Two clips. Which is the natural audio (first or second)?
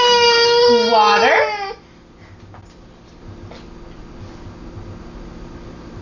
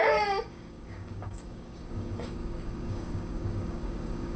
first